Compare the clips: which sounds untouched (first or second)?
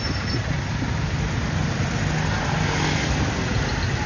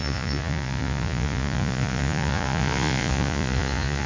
first